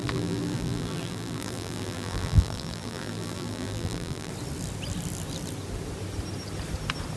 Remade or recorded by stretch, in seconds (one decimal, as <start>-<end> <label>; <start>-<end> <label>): 0.0-4.3 remade; 4.3-7.2 recorded

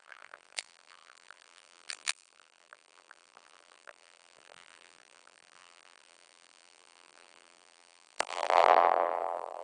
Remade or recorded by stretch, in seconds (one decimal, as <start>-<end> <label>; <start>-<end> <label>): 0.0-9.6 remade